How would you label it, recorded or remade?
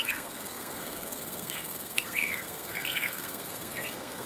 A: remade